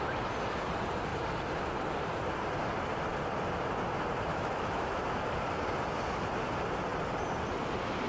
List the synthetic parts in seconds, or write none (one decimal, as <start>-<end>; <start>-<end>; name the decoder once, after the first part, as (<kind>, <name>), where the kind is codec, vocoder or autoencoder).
4.3-4.9 (autoencoder, DAC-VAE)